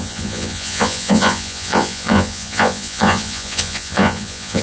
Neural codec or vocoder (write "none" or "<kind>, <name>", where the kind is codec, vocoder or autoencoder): vocoder, Vocos